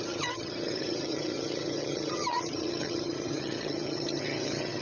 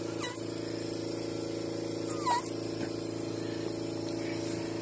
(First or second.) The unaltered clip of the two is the second